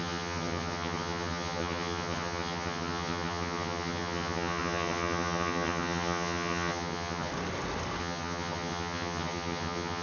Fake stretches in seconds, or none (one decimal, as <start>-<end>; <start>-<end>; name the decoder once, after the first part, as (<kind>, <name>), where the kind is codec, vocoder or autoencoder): 0.0-7.3 (vocoder, HiFi-GAN); 8.0-10.0